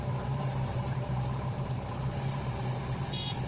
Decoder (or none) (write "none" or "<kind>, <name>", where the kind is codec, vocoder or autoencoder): vocoder, BigVGAN v2